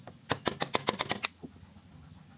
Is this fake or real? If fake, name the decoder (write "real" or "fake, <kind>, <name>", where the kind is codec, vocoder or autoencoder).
real